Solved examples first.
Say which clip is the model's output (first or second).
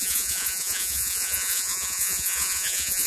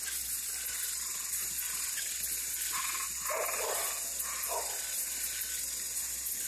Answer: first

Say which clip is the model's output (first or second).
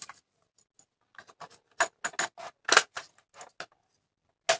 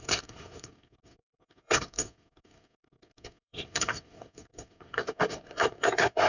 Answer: second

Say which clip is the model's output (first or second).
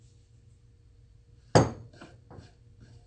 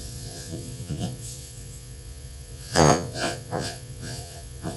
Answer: second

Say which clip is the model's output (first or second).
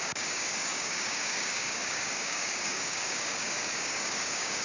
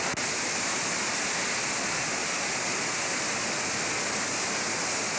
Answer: first